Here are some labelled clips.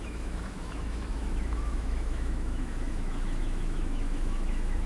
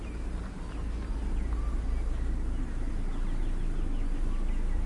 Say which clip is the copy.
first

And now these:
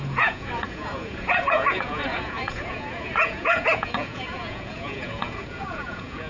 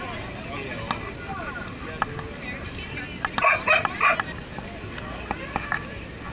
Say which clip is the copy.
first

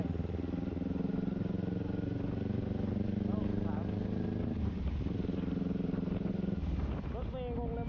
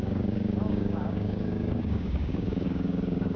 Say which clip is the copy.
second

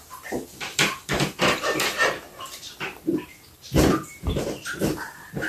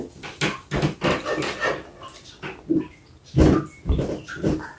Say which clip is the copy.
first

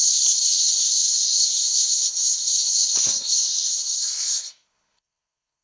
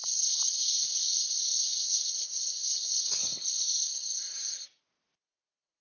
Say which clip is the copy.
first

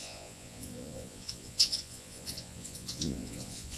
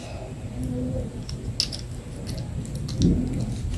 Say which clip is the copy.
first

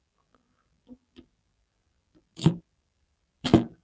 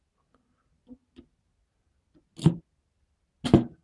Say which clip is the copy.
first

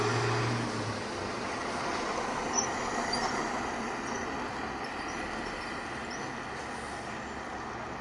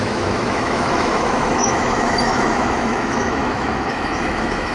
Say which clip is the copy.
second